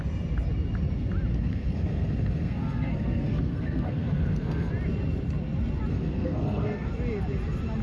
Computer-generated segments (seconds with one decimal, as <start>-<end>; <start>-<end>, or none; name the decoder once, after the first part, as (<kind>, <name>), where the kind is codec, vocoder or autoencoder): 1.3-4.7 (codec, SNAC); 5.9-6.9